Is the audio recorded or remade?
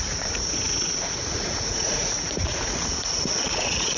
remade